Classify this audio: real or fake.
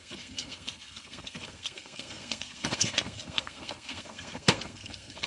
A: fake